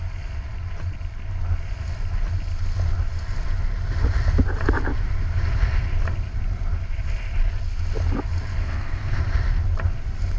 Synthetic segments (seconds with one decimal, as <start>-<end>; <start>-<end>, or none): 8.6-9.2

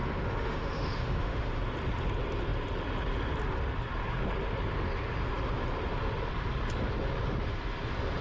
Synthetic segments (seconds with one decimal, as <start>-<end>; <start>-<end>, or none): 0.0-1.6

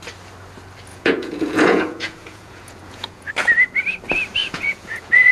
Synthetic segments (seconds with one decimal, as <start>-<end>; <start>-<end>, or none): 0.9-3.3; 4.4-5.3

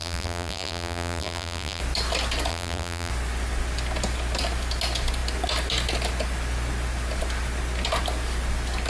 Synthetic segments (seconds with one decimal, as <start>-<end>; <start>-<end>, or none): 0.0-1.8; 2.5-3.1